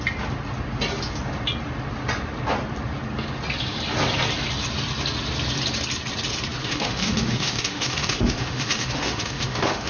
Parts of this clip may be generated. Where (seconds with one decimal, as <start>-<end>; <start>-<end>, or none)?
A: 6.6-9.9